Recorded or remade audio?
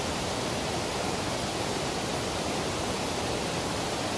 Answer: recorded